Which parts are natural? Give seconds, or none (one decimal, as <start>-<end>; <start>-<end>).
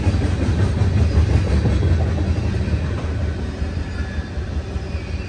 0.0-3.1; 3.8-5.3